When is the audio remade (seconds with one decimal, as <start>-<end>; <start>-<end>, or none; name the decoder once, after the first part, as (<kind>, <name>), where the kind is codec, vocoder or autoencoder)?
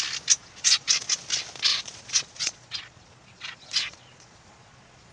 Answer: 0.4-0.9 (vocoder, Vocos); 1.7-5.1